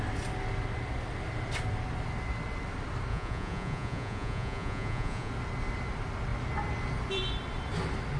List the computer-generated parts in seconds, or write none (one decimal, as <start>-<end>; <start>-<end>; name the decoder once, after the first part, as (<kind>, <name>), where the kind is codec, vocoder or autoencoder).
3.1-5.3 (vocoder, Vocos)